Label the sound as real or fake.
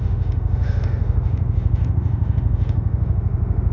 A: fake